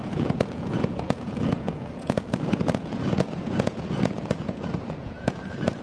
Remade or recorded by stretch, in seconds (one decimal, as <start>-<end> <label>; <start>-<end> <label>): 0.0-5.8 remade